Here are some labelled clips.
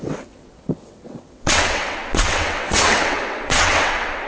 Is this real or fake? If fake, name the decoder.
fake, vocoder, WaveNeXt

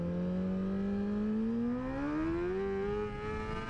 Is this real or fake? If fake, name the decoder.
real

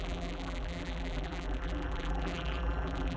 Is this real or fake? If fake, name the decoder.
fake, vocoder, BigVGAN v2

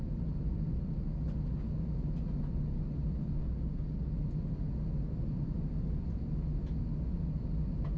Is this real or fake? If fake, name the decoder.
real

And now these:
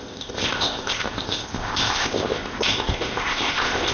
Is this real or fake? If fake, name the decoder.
fake, codec, ZipCodec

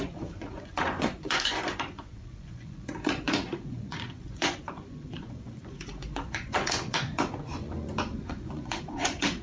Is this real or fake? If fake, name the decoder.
fake, vocoder, Vocos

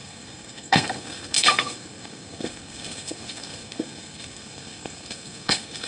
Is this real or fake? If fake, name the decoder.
fake, codec, SNAC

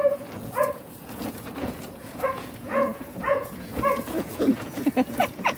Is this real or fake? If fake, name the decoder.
fake, vocoder, Vocos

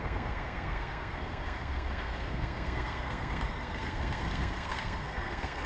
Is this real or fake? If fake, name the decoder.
fake, codec, SNAC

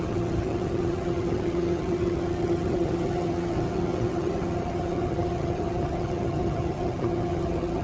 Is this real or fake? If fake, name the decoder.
fake, vocoder, HiFi-GAN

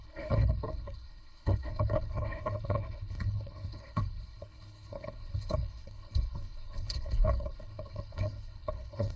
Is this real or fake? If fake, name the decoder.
fake, codec, HILCodec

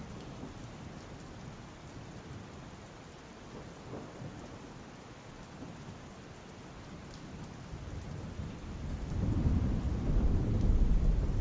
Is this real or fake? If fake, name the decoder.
fake, vocoder, BigVGAN v2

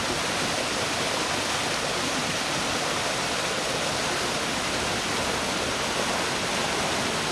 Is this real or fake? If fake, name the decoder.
real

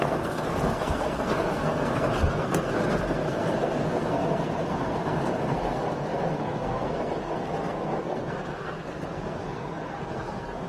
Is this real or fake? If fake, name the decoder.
fake, codec, SNAC